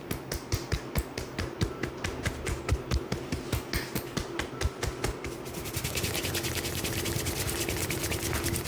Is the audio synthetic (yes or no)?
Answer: no